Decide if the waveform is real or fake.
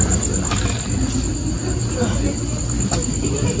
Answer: real